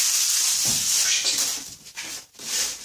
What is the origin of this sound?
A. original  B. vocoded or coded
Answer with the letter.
A